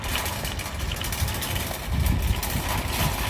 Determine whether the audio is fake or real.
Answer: real